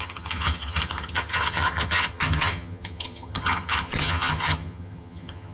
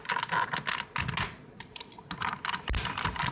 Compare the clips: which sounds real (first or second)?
second